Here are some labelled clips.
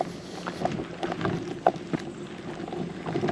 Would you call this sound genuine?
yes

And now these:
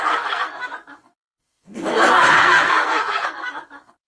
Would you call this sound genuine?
no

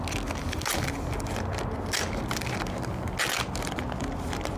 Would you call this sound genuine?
yes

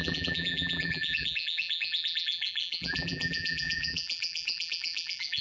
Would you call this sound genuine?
no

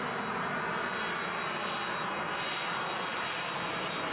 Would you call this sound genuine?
yes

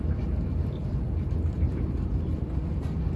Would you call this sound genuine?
no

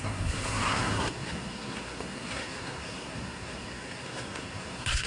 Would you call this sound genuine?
no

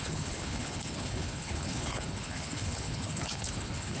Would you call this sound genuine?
no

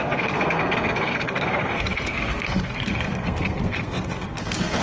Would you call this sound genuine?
no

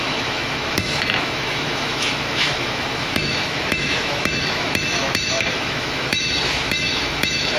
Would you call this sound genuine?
no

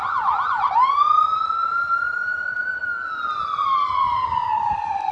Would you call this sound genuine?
yes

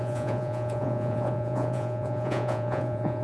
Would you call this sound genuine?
no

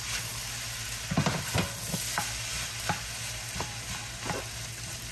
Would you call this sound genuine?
yes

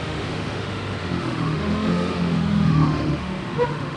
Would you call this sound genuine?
no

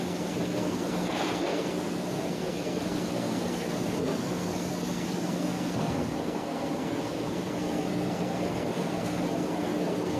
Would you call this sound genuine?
no